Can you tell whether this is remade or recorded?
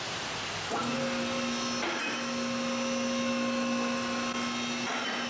recorded